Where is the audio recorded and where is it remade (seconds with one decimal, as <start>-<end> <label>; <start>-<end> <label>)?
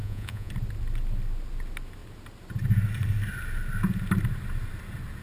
0.0-0.5 remade; 0.5-5.2 recorded